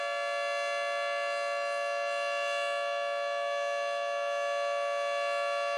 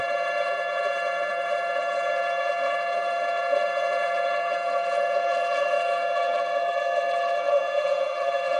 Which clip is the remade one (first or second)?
second